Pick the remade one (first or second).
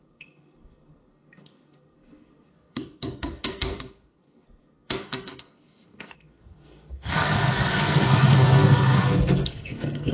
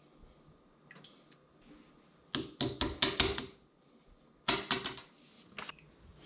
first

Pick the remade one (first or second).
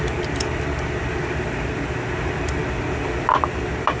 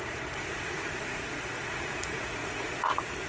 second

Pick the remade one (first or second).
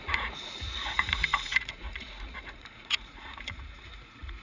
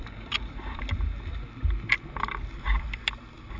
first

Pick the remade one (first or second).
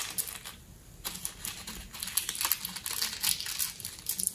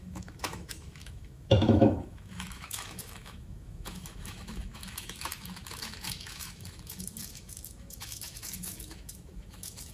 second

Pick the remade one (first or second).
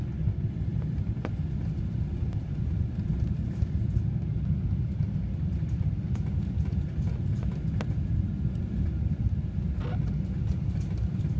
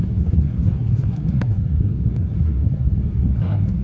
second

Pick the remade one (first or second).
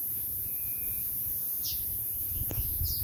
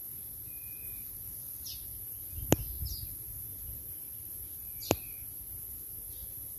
first